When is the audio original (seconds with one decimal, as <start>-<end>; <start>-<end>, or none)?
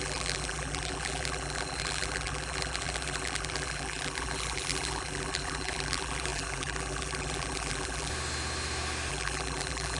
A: 8.1-9.1